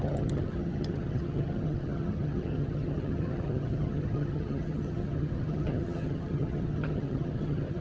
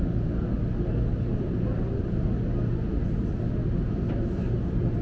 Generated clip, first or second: first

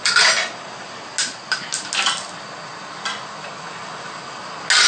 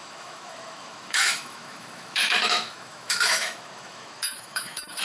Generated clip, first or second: second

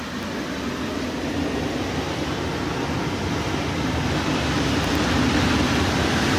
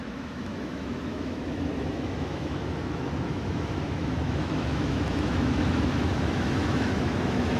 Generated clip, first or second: second